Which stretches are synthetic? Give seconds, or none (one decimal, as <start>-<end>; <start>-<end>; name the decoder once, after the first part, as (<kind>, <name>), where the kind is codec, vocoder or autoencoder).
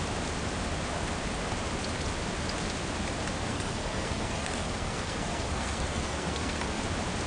3.4-6.8 (codec, SNAC)